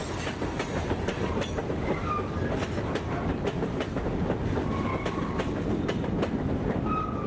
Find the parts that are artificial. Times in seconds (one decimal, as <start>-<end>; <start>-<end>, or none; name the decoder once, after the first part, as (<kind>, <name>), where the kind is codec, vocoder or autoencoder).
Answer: 0.0-4.9 (vocoder, BigVGAN v2); 6.4-7.3